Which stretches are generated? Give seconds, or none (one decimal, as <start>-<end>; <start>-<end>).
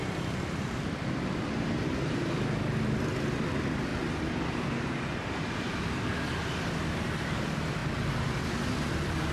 0.0-3.9; 4.4-6.1; 6.6-7.8; 8.9-9.3